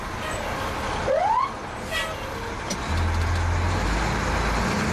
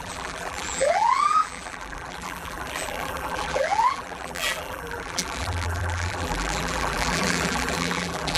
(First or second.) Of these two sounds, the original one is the first